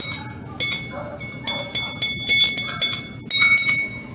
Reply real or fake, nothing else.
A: real